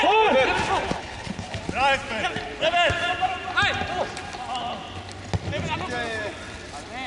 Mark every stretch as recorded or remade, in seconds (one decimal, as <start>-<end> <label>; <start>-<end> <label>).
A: 0.0-1.0 recorded; 1.0-1.6 remade; 1.6-7.1 recorded